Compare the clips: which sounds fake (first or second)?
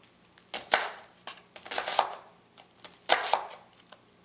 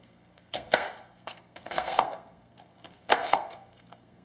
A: second